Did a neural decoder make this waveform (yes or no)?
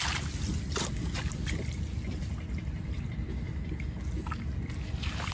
no